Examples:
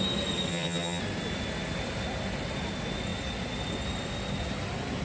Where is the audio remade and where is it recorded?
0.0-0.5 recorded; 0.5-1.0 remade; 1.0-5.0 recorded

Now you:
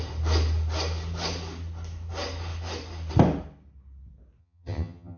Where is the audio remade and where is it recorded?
0.0-4.4 recorded; 4.4-5.2 remade

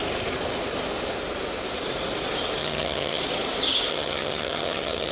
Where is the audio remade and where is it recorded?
0.0-2.6 recorded; 2.6-3.2 remade; 3.2-3.9 recorded; 3.9-5.1 remade